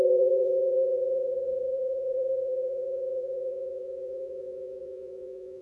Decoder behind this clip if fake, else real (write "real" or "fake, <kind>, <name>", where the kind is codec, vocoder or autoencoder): fake, vocoder, Vocos